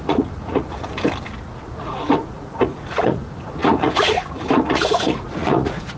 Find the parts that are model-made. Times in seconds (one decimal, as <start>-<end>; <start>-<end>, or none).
0.0-0.9; 1.4-6.0